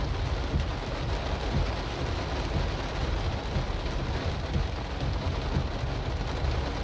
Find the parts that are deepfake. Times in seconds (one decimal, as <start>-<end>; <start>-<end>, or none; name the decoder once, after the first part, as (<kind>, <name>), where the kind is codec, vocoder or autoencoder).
none